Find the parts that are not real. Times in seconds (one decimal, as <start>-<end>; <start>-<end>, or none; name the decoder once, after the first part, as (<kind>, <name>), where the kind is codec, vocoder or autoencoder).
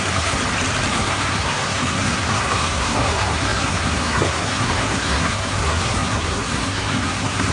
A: 0.0-0.4 (codec, SNAC); 0.9-7.5